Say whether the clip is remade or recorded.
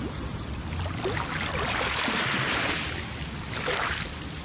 recorded